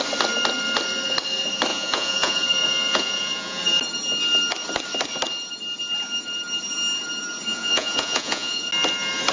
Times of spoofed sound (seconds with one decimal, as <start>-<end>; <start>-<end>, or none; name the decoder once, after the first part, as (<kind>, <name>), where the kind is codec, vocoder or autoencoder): 1.7-3.6 (vocoder, Vocos); 7.5-8.7